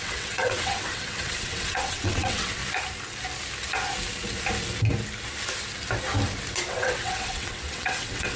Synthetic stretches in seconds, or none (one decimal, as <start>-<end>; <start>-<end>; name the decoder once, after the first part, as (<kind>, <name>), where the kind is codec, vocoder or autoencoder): 0.0-2.6 (vocoder, WaveNeXt); 6.7-8.4